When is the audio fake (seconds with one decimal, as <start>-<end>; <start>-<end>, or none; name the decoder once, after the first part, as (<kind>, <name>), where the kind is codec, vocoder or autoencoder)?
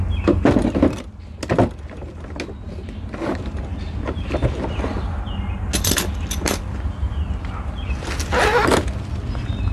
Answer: none